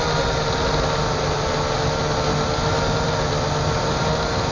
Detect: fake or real real